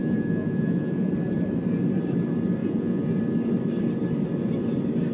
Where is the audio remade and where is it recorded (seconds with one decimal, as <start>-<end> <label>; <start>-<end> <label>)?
0.0-1.1 remade; 1.1-2.6 recorded; 2.6-3.2 remade; 3.2-5.1 recorded